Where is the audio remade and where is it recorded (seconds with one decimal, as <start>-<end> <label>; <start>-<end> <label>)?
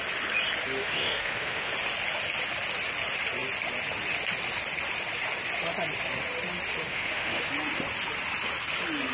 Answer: 0.0-0.8 recorded; 0.8-1.7 remade; 1.7-6.9 recorded; 6.9-7.4 remade; 7.4-9.1 recorded